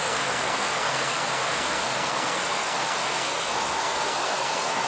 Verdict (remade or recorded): remade